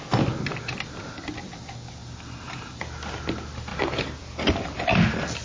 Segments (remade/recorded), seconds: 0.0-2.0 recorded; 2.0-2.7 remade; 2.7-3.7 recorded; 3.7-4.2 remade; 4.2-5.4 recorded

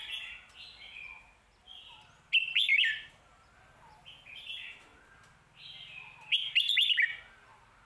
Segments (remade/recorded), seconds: 0.0-7.9 recorded

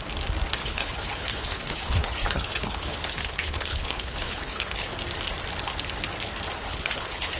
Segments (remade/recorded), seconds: 0.0-0.6 recorded; 0.6-4.9 remade; 4.9-6.6 recorded; 6.6-7.4 remade

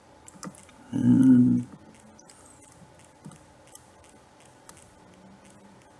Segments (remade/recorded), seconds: 0.0-6.0 recorded

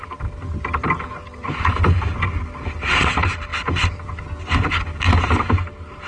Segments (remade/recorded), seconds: 0.0-6.1 recorded

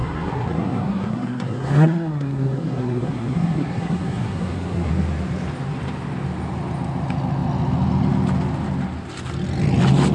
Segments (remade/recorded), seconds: 0.0-4.9 remade; 4.9-10.1 recorded

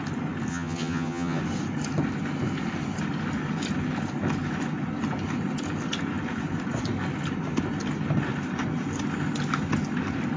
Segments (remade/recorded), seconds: 0.0-0.5 recorded; 0.5-1.4 remade; 1.4-10.4 recorded